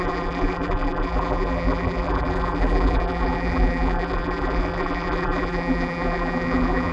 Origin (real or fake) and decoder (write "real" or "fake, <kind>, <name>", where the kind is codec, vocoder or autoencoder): fake, vocoder, BigVGAN v2